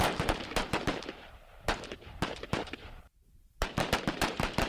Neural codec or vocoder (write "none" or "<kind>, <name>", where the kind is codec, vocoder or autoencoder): vocoder, BigVGAN v2